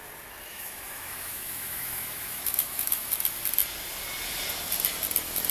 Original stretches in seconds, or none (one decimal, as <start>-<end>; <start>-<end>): 0.0-0.5; 3.1-5.5

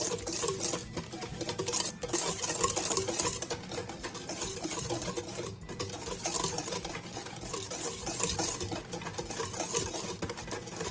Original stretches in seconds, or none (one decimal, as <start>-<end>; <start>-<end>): 0.0-10.9